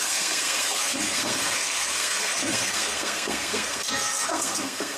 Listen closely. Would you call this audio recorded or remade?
remade